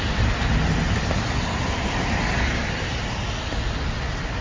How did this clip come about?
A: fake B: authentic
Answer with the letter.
B